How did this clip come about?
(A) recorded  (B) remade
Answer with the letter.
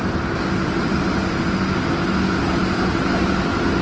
A